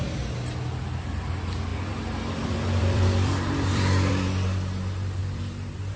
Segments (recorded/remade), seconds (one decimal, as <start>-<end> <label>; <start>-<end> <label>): 0.0-1.7 recorded; 1.7-4.1 remade; 4.1-5.2 recorded; 5.2-6.0 remade